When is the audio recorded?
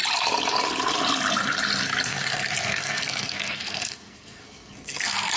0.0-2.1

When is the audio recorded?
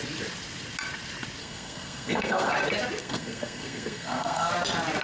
0.0-1.4; 2.5-3.0; 4.5-5.0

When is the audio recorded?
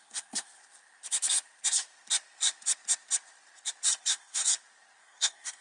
0.6-4.0; 4.4-5.0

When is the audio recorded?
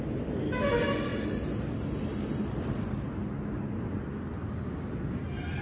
0.0-5.6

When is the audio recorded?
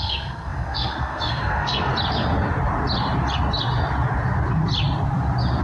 1.9-5.6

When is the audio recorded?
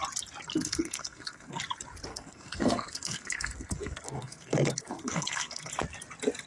0.0-0.5; 1.6-2.1; 5.7-6.5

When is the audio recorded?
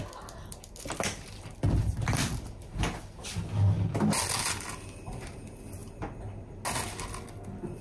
0.0-7.8